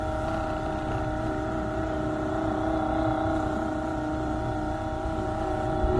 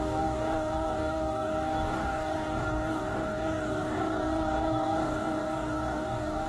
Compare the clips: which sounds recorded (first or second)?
first